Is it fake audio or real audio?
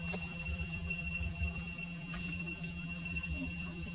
fake